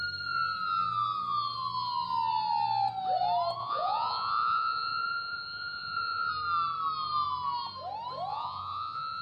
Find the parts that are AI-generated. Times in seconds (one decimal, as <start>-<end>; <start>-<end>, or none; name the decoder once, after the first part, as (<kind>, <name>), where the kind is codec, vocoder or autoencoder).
3.6-6.3 (vocoder, Vocos); 8.3-9.2